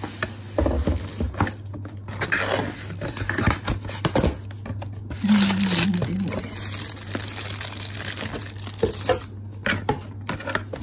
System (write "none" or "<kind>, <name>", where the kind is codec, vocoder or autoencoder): none